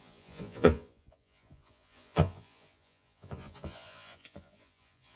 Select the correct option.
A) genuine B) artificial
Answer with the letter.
B